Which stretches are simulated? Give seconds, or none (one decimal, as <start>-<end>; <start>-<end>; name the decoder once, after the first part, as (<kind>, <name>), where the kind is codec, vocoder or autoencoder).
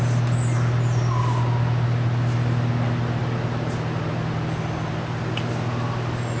none